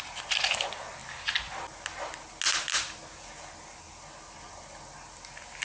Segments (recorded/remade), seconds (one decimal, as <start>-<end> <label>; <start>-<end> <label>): 0.0-5.6 recorded